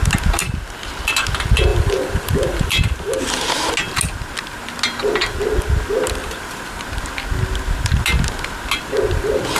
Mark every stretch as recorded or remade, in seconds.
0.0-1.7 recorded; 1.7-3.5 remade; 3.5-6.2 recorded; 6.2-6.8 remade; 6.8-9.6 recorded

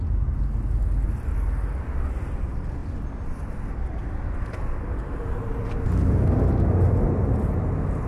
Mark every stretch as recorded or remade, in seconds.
0.0-8.1 recorded

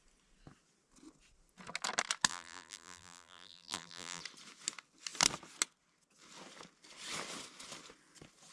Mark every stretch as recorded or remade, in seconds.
0.0-2.3 recorded; 2.3-4.2 remade; 4.2-8.5 recorded

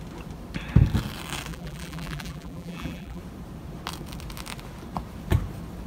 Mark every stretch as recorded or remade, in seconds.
0.0-1.5 recorded; 1.5-3.2 remade; 3.2-5.9 recorded

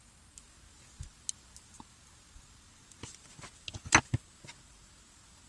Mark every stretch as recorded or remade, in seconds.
0.0-5.5 recorded

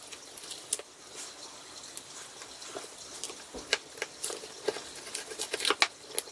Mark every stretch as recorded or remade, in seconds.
0.0-6.3 recorded